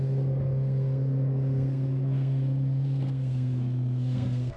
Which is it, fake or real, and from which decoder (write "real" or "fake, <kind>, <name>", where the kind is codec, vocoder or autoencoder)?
fake, codec, SNAC